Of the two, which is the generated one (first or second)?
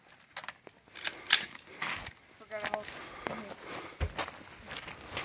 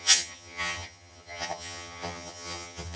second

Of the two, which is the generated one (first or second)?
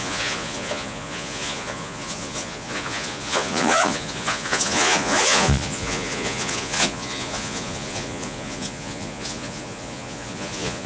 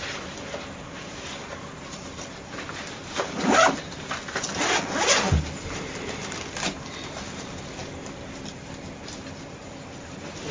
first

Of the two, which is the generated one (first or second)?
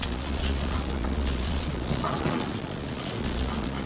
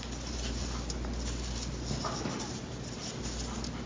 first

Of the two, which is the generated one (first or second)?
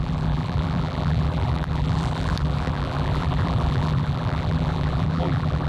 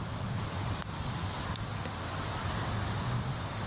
first